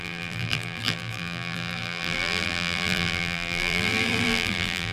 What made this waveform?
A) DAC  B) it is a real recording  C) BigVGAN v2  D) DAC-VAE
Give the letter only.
C